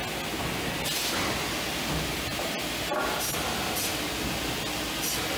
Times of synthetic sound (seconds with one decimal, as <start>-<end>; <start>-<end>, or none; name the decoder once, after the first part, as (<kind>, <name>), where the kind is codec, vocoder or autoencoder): none